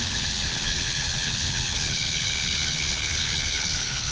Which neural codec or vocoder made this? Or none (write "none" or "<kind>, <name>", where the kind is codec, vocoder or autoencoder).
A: codec, HILCodec